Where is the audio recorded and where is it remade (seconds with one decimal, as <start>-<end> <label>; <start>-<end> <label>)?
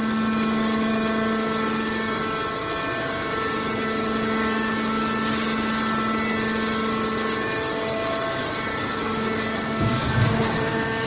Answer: 0.0-8.7 recorded; 8.7-11.1 remade